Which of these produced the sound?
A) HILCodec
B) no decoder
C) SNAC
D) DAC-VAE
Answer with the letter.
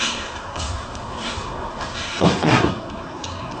C